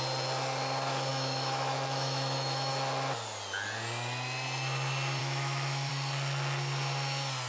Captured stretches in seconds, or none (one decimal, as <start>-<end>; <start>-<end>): 0.0-1.1; 2.7-5.2; 5.9-7.5